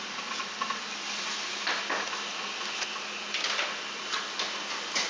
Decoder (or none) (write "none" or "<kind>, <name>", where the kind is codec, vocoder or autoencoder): none